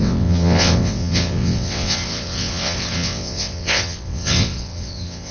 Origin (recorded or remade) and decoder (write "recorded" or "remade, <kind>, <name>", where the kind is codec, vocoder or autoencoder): remade, vocoder, WaveNeXt